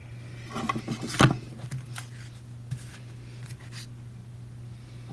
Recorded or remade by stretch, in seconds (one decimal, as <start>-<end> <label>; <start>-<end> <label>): 0.0-5.1 recorded